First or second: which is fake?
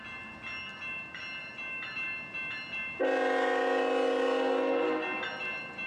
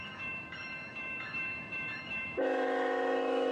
second